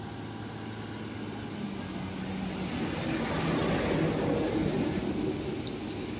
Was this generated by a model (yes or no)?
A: no